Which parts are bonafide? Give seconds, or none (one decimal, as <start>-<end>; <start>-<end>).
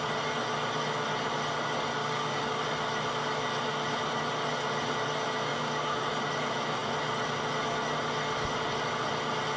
0.0-2.0; 2.6-5.5; 6.1-9.6